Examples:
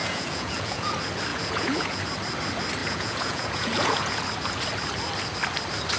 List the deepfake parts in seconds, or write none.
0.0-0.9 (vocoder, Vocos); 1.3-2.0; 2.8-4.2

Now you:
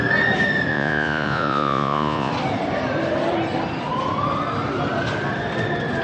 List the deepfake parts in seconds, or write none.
0.7-2.3 (vocoder, Vocos)

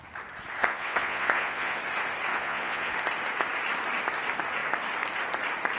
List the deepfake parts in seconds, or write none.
0.6-1.8 (vocoder, Vocos); 2.3-2.9

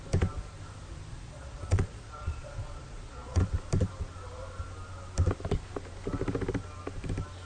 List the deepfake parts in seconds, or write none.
1.1-3.4 (vocoder, Vocos)

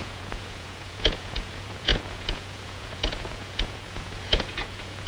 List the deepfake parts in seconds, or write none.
0.0-5.1 (vocoder, Vocos)

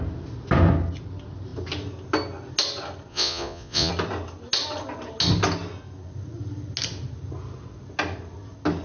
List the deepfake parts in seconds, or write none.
3.1-3.9 (vocoder, Vocos)